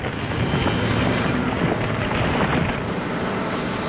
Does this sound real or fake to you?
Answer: real